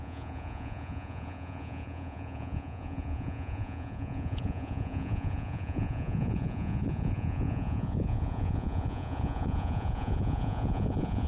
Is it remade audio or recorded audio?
remade